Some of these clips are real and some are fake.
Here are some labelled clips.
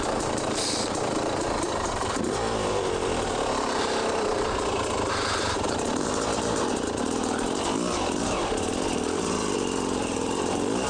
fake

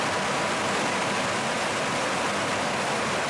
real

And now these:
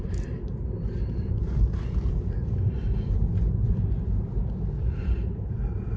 fake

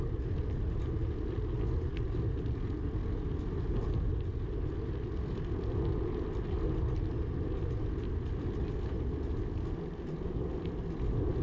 real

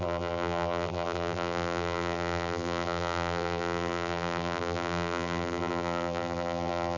fake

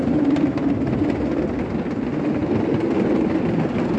real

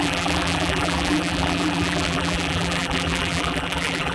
fake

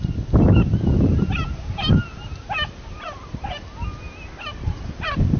real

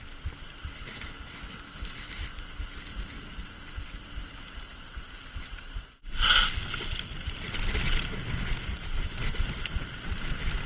real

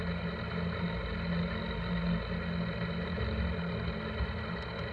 real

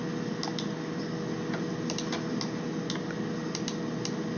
real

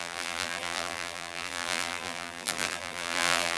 fake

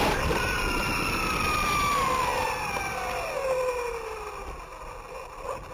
real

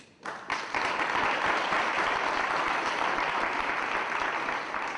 fake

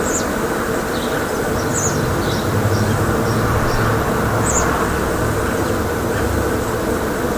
fake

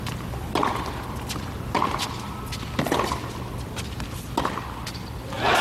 real